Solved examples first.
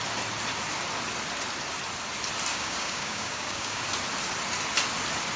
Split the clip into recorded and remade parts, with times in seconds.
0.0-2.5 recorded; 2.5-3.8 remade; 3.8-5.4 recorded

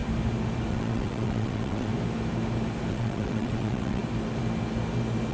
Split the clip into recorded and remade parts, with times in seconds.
0.0-0.7 recorded; 0.7-1.9 remade; 1.9-2.9 recorded; 2.9-4.0 remade; 4.0-5.3 recorded

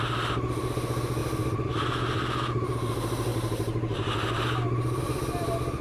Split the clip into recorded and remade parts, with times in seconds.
0.0-1.2 recorded; 1.2-1.7 remade; 1.7-5.8 recorded